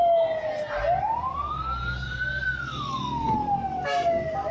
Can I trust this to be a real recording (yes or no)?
yes